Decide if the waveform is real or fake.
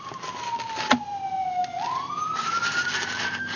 real